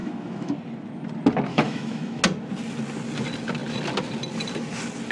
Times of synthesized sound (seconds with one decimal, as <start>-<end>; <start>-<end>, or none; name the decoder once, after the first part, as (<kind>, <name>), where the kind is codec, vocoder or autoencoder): 0.0-0.5 (autoencoder, DAC-VAE); 1.5-2.2